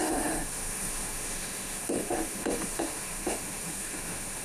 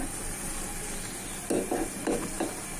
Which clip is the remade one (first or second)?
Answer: first